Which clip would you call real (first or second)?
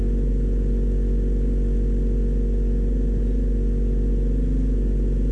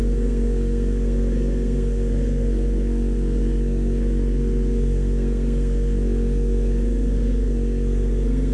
first